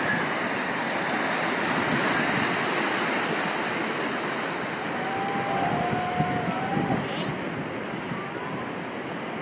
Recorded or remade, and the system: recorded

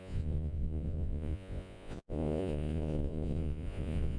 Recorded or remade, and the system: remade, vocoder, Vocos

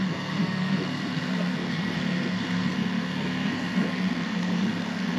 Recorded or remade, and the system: remade, codec, SNAC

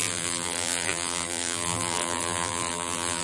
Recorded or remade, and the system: remade, vocoder, BigVGAN v2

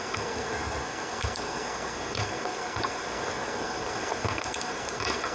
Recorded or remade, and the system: remade, codec, SNAC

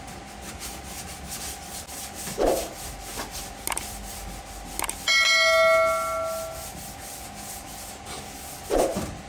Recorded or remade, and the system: recorded